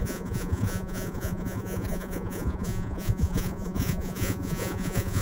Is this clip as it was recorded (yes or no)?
no